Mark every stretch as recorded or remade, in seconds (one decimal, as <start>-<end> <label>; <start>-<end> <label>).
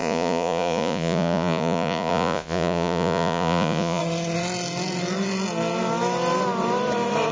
0.0-4.0 remade; 4.0-7.3 recorded